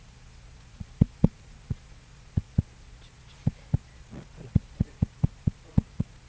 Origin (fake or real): fake